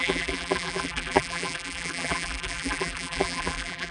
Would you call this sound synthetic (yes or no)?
yes